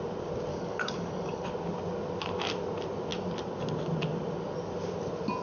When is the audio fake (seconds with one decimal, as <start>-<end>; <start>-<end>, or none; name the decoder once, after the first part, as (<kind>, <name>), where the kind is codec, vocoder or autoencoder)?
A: 0.5-1.5 (codec, DAC)